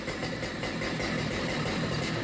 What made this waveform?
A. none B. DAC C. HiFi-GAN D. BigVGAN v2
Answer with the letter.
D